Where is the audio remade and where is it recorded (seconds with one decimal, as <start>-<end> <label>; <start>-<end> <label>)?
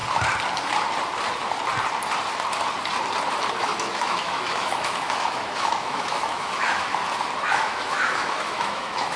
0.0-3.5 recorded; 3.5-7.0 remade; 7.0-7.5 recorded; 7.5-9.2 remade